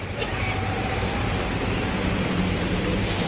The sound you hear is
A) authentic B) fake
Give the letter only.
B